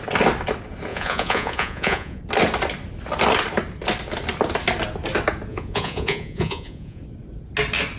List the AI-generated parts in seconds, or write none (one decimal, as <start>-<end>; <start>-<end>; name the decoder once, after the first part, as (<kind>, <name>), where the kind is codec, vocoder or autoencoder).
0.9-2.2 (vocoder, Vocos); 5.5-7.0